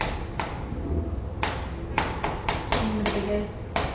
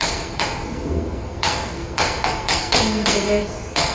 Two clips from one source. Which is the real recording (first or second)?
first